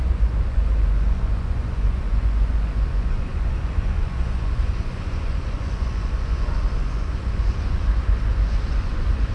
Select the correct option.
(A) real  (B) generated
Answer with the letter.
B